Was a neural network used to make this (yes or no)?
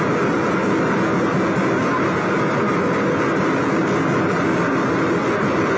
no